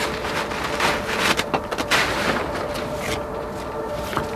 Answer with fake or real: real